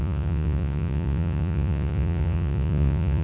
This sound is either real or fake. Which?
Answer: fake